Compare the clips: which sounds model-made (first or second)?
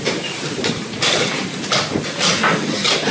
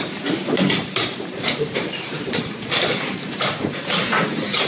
second